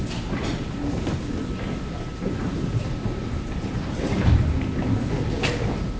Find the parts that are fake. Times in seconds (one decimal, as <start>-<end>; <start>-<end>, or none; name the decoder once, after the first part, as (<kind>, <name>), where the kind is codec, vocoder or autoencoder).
2.1-2.8 (vocoder, BigVGAN v2); 3.2-4.5